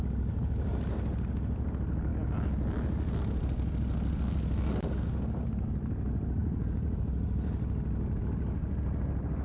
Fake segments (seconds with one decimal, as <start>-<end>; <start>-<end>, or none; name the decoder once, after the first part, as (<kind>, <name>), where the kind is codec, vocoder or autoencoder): 6.4-7.0 (vocoder, Vocos)